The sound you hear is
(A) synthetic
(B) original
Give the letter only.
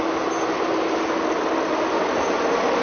B